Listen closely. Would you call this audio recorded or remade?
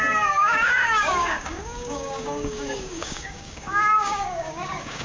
remade